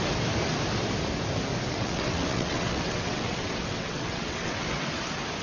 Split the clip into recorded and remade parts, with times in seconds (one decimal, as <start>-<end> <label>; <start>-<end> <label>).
0.0-1.7 recorded; 1.7-4.9 remade; 4.9-5.4 recorded